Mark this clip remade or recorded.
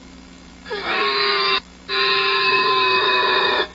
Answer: remade